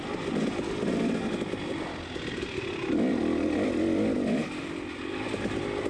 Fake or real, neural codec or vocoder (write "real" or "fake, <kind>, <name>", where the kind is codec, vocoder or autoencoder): real